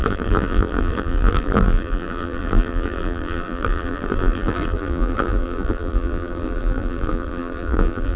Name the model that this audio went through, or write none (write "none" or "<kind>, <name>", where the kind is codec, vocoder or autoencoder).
vocoder, BigVGAN v2